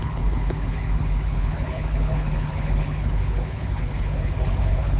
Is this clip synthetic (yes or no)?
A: yes